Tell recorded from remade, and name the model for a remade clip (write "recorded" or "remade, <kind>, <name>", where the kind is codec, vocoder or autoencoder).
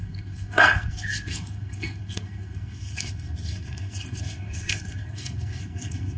remade, codec, SNAC